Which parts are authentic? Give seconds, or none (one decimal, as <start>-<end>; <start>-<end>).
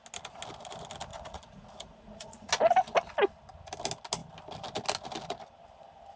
0.0-1.1; 2.5-6.2